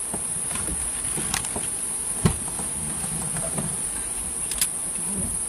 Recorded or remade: recorded